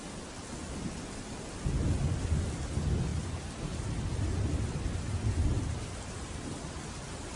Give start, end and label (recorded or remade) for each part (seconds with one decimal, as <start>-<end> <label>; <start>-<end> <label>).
0.0-7.4 recorded